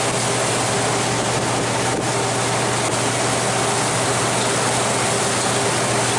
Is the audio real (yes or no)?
yes